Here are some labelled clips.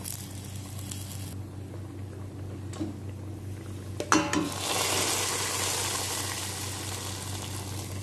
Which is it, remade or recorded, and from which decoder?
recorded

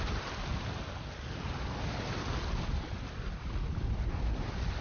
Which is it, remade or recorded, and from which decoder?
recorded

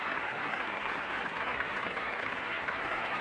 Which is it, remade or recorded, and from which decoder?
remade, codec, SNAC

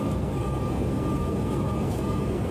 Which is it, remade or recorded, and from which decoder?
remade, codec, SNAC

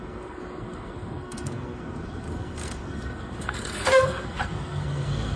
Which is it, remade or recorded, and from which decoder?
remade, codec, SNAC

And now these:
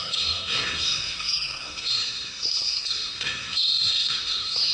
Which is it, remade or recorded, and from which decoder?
remade, codec, SNAC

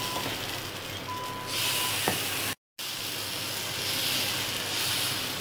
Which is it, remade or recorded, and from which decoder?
recorded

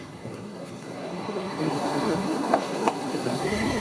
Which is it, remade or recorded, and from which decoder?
remade, codec, SNAC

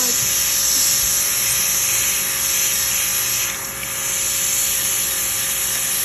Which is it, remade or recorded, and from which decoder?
recorded